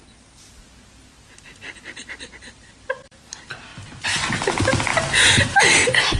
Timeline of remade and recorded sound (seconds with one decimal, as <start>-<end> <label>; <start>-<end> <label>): 0.0-3.7 recorded; 3.7-4.3 remade; 4.3-6.2 recorded